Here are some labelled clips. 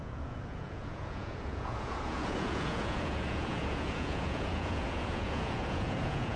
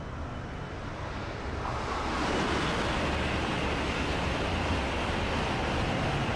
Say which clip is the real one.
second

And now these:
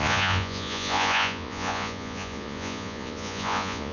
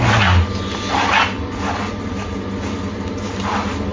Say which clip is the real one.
second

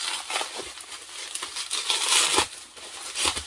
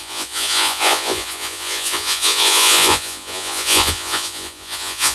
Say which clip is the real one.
first